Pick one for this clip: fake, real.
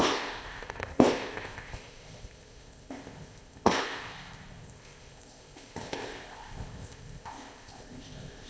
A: fake